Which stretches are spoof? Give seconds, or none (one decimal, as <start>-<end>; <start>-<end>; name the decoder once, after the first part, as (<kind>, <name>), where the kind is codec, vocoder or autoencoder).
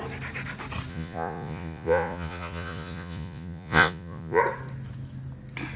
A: 0.9-4.4 (vocoder, Vocos)